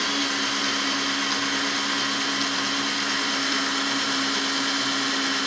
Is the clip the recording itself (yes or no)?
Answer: yes